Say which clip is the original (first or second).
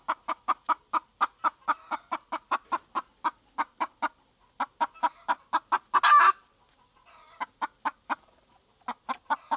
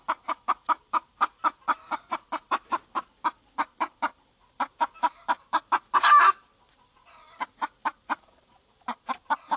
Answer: first